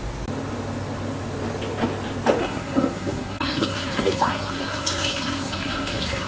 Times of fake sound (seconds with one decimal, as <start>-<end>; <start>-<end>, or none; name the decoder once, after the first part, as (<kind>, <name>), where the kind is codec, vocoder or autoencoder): 2.4-6.3 (codec, SNAC)